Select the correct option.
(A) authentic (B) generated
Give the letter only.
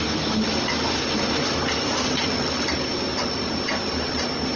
A